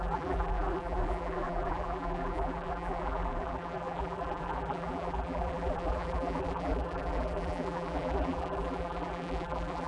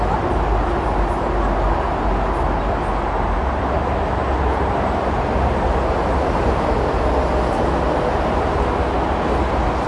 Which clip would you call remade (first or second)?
first